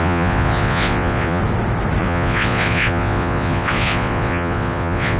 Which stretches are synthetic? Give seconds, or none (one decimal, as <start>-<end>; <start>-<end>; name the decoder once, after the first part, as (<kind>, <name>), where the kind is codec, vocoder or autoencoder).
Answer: 0.0-1.4 (vocoder, Vocos); 2.0-5.2